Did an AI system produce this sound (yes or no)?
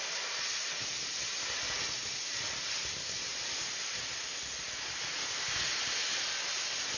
no